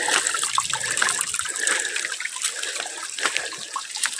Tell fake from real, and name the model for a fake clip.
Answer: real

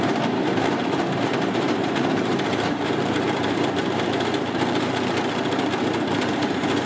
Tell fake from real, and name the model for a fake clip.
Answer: fake, vocoder, BigVGAN v2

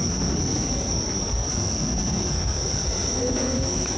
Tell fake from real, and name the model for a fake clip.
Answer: fake, codec, SNAC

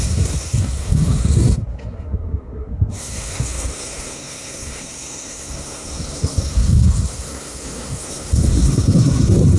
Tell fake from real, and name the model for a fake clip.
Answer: fake, codec, SNAC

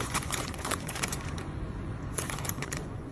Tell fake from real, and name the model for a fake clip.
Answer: fake, vocoder, Vocos